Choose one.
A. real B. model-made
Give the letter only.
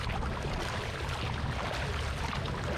A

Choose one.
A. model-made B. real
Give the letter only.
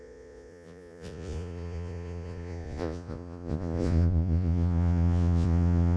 A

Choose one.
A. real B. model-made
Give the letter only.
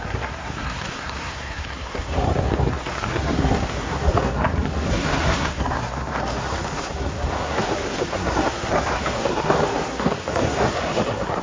B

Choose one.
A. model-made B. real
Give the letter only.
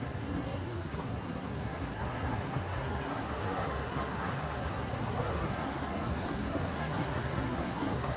A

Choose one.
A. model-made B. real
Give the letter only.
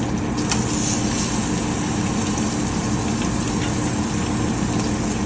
B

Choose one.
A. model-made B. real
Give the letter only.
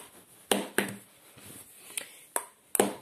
B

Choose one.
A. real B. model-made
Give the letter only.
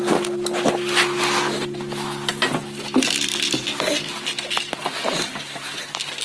A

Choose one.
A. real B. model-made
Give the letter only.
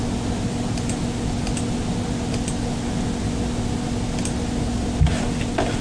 A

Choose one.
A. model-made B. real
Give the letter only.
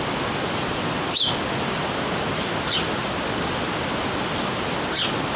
B